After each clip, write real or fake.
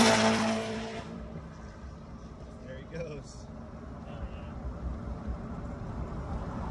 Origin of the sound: fake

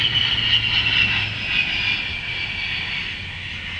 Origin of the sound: real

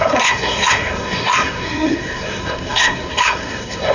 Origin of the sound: fake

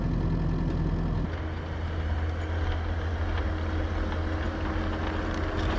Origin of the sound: real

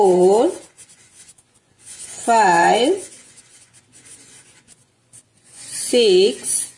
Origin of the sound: fake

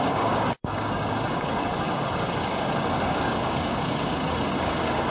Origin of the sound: fake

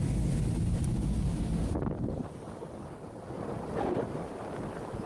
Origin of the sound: real